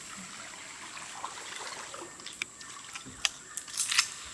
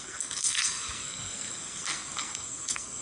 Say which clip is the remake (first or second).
second